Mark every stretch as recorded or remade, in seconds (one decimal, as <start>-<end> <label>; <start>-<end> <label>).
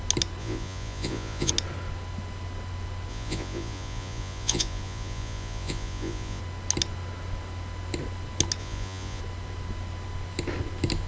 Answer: 0.0-0.4 recorded; 0.4-1.5 remade; 1.5-3.1 recorded; 3.1-6.4 remade; 6.4-8.6 recorded; 8.6-9.2 remade; 9.2-11.1 recorded